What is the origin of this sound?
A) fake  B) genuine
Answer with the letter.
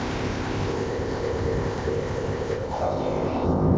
A